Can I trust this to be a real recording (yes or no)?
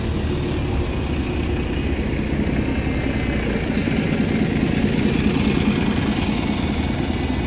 yes